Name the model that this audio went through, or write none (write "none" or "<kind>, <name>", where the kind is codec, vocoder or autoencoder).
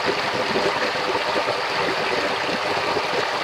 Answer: none